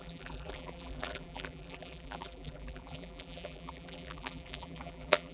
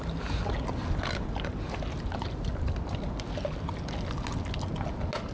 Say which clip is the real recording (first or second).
second